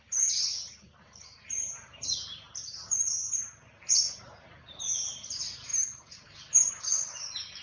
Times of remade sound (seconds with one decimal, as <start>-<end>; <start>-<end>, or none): none